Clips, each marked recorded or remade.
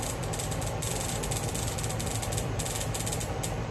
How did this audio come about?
remade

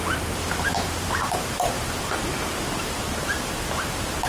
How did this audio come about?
remade